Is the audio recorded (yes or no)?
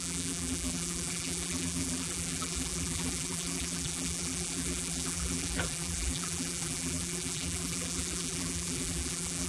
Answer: no